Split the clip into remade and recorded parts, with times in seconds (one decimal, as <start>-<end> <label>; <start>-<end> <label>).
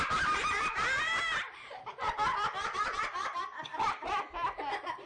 0.0-1.4 remade; 1.4-5.1 recorded